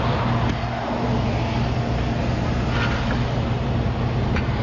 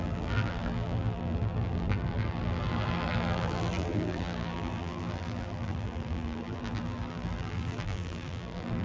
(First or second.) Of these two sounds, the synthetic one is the second